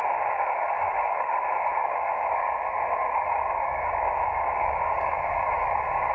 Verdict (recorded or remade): remade